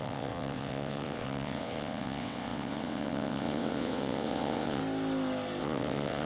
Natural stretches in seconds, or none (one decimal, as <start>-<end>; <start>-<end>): 4.8-5.6